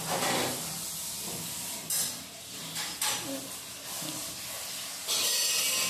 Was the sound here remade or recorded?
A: recorded